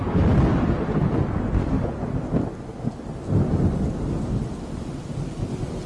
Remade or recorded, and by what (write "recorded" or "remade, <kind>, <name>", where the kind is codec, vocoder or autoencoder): recorded